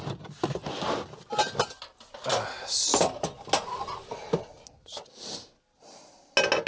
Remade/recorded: recorded